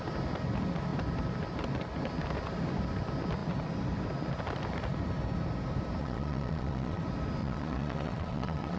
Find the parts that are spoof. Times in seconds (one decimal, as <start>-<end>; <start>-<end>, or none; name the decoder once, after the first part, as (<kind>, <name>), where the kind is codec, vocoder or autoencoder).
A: 6.0-7.0 (vocoder, Vocos); 7.4-8.8